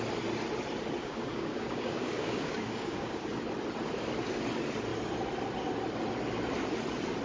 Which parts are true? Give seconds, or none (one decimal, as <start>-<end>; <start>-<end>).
0.0-1.0; 3.3-7.2